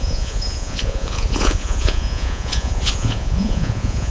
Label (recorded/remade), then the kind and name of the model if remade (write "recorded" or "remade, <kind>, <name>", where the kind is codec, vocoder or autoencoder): remade, vocoder, Vocos